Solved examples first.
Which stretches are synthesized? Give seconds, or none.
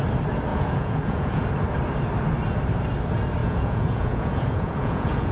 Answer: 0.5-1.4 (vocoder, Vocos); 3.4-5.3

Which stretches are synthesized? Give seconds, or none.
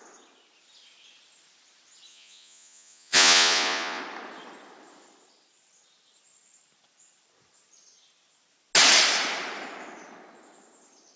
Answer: 2.1-4.0 (vocoder, Vocos)